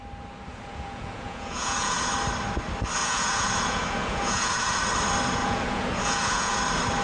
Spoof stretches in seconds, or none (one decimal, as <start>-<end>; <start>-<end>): 0.5-2.1; 3.0-4.8; 5.4-6.6

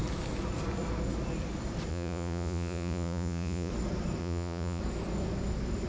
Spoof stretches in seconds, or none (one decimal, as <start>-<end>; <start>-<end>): 1.9-3.7; 4.2-4.8

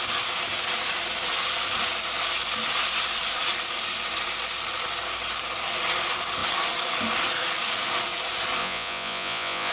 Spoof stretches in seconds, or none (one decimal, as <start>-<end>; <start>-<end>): 8.6-9.7

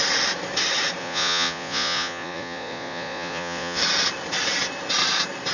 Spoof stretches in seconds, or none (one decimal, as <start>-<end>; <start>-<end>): 1.0-3.8

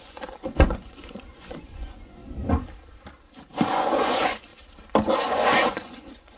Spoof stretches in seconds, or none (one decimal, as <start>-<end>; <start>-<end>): 0.0-2.2; 3.7-4.5; 5.1-6.4

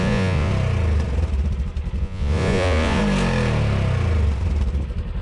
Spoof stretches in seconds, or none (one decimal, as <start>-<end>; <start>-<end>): 0.0-0.5; 2.0-3.0